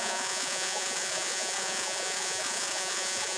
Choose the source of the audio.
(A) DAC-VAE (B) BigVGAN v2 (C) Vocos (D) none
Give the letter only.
C